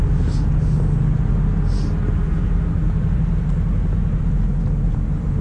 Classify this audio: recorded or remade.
recorded